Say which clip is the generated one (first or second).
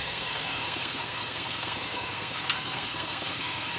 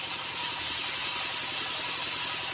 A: first